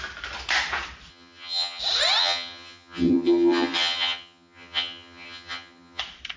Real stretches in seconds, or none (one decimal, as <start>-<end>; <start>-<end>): 0.0-1.1; 1.8-2.2; 6.0-6.4